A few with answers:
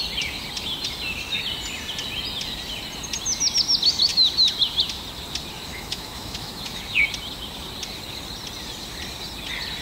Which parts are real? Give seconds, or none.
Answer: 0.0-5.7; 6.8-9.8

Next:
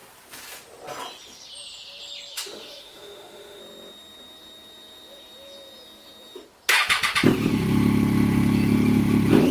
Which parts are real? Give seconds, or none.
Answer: 0.0-2.3; 3.6-9.5